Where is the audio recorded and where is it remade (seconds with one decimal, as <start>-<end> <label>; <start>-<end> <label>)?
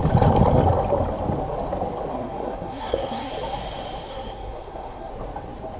0.0-2.1 recorded; 2.1-3.3 remade; 3.3-4.1 recorded; 4.1-5.1 remade; 5.1-5.8 recorded